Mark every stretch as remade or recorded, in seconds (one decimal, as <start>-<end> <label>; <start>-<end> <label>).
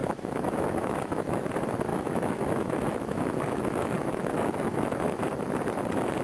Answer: 0.0-1.5 remade; 1.5-1.9 recorded; 1.9-5.2 remade; 5.2-6.2 recorded